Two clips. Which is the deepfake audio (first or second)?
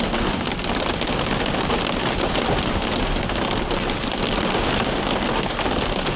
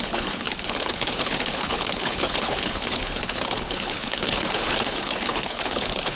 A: second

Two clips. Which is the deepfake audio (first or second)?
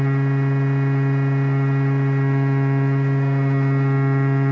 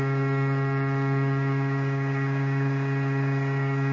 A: second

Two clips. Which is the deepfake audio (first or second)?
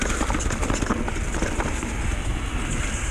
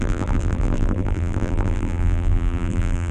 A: second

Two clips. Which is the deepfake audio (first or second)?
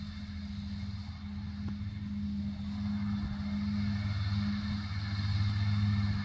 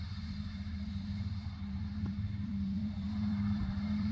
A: second